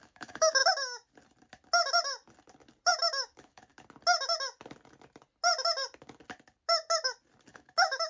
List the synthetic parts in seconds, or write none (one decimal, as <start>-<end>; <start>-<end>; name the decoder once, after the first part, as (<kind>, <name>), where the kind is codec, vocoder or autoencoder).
0.0-0.6 (autoencoder, DAC-VAE); 3.0-3.7; 7.5-8.1